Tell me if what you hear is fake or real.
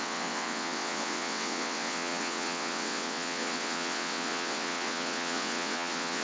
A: fake